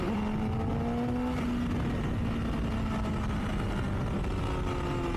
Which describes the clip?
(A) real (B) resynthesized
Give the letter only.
A